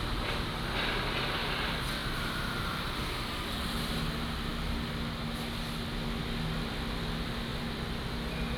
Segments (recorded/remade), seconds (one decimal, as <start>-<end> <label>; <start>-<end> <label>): 0.0-2.0 recorded; 2.0-3.9 remade; 3.9-7.5 recorded; 7.5-8.0 remade; 8.0-8.6 recorded